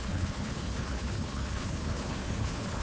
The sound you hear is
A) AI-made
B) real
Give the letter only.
A